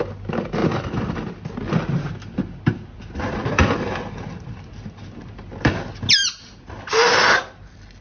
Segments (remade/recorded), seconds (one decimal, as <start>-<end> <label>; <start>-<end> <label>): 0.0-8.0 recorded